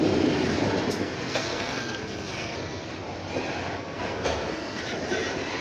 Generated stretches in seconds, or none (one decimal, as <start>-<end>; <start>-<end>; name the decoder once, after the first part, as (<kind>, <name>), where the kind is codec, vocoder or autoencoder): 1.0-2.9 (codec, SNAC); 3.8-4.8